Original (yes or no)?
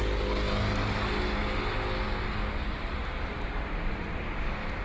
yes